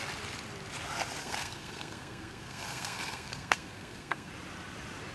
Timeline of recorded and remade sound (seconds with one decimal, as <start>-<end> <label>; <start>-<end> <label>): 0.0-1.2 recorded; 1.2-4.3 remade; 4.3-5.1 recorded